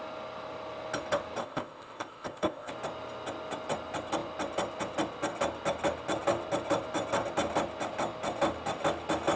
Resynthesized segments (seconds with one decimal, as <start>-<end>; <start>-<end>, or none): 1.4-2.7

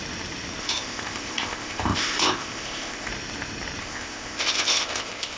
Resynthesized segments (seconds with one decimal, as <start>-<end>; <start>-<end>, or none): 0.6-3.1; 3.8-5.4